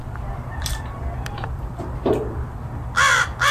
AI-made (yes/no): yes